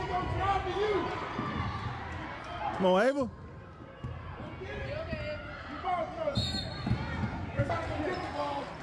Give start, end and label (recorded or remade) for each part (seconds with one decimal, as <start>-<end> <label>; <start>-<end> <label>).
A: 0.0-8.8 recorded